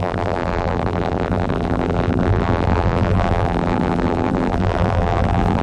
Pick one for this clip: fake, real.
fake